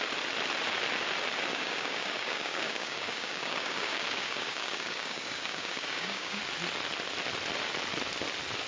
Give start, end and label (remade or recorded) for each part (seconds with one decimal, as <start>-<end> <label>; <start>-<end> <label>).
0.0-1.5 recorded; 1.5-6.4 remade; 6.4-8.7 recorded